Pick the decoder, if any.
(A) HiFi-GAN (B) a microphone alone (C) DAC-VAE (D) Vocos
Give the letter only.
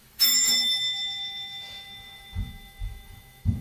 C